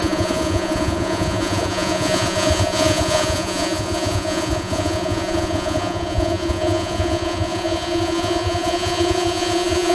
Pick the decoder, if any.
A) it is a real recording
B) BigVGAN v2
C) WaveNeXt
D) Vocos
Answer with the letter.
D